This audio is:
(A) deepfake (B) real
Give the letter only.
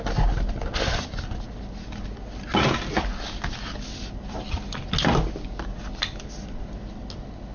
B